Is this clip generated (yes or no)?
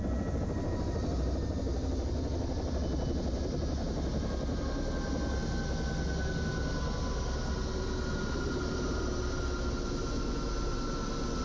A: no